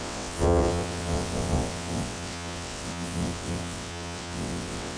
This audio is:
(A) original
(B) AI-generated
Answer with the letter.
B